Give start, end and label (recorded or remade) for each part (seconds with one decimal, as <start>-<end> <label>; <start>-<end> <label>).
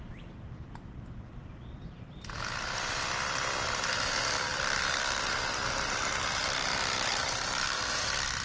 0.0-8.4 recorded